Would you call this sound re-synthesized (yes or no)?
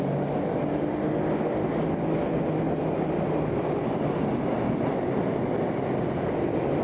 no